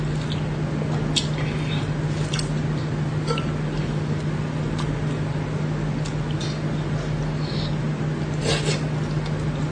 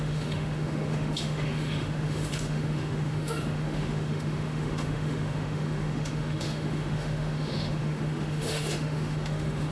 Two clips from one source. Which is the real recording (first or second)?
first